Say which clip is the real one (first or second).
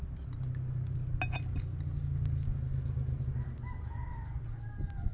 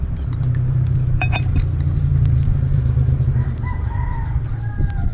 first